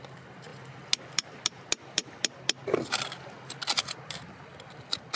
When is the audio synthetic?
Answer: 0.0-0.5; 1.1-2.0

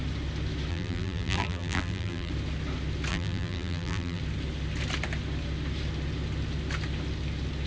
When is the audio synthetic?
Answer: 0.7-2.3; 3.1-4.2

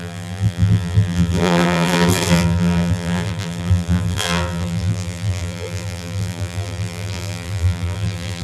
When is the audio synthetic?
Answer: 0.0-8.4

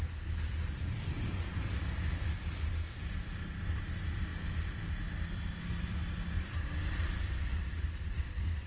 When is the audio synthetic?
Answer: none

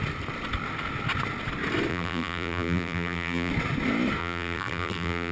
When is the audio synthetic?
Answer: 1.9-3.5; 4.2-5.3

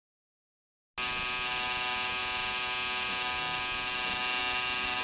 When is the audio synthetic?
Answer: none

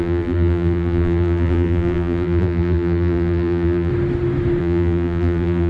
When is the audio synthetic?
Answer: 0.0-3.9; 4.6-5.7